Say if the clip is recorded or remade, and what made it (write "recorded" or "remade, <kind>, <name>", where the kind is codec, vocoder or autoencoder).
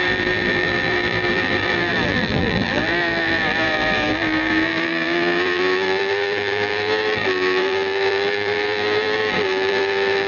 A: remade, vocoder, BigVGAN v2